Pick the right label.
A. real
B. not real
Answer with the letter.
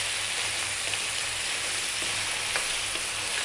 A